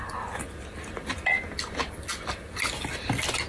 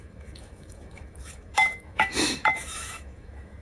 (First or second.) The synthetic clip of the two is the second